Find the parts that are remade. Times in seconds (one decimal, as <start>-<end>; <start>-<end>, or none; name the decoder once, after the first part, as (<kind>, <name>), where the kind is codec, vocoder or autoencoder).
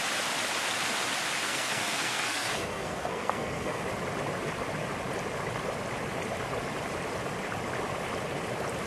1.4-3.8 (codec, SNAC)